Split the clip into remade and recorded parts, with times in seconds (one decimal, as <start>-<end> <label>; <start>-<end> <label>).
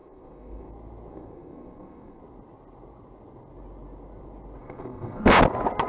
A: 0.0-0.7 remade; 0.7-1.1 recorded; 1.1-2.2 remade; 2.2-4.6 recorded; 4.6-5.3 remade; 5.3-5.9 recorded